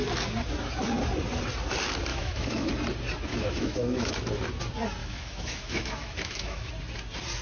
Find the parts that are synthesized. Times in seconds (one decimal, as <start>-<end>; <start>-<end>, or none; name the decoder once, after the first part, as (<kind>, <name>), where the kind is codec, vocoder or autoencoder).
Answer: 2.1-2.7 (autoencoder, DAC-VAE); 3.3-4.1; 5.0-6.7

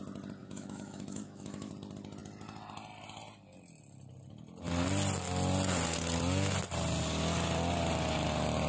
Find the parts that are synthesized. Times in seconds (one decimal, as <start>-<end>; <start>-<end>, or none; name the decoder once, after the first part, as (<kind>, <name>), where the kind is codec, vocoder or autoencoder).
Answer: 0.4-1.7 (autoencoder, DAC-VAE)